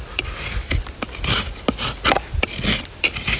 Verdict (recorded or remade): recorded